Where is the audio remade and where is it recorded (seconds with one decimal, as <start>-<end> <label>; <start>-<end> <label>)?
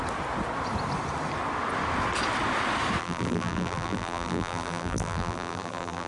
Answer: 0.0-3.0 recorded; 3.0-6.1 remade